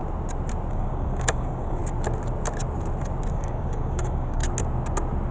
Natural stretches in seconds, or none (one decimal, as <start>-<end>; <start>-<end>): 0.0-0.7; 1.8-3.3; 4.4-5.3